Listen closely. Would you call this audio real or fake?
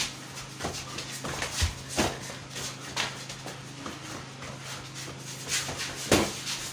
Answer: real